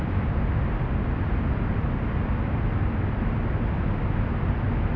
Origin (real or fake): real